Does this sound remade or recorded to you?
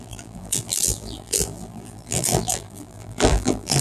remade